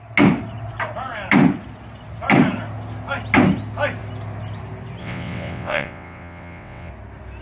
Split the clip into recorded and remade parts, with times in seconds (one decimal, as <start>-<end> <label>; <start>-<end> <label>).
0.0-5.0 recorded; 5.0-6.9 remade; 6.9-7.4 recorded